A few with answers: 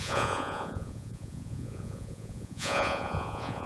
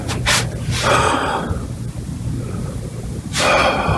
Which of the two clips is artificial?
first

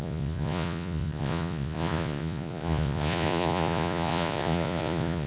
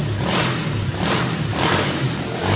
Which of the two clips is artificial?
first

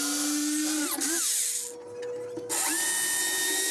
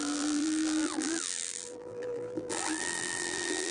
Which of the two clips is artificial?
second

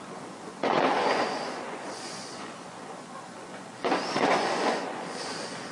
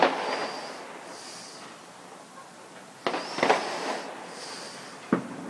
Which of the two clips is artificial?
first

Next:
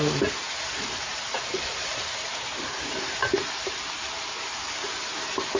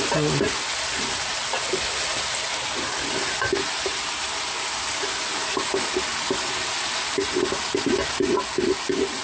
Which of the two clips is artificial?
first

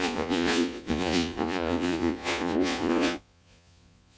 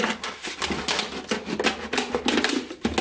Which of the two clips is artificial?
first